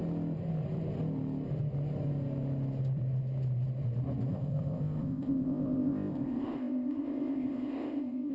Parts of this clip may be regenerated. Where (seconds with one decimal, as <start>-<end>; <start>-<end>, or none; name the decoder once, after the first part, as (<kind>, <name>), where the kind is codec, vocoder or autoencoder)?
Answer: 4.3-8.3 (codec, ZipCodec)